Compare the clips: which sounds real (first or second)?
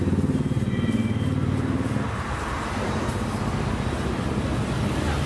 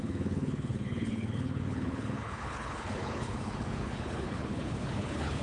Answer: first